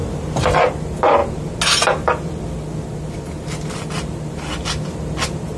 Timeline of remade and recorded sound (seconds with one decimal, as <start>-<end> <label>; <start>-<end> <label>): 0.0-5.6 recorded

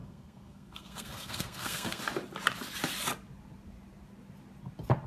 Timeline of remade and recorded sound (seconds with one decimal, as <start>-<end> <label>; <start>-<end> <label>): 0.0-2.0 remade; 2.0-5.1 recorded